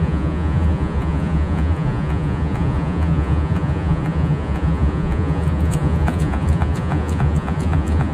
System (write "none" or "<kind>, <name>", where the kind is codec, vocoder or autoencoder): vocoder, Vocos